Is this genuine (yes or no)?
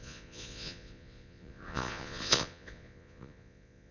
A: no